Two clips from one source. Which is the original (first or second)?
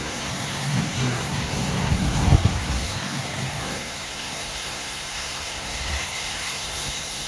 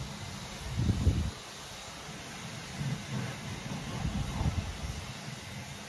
second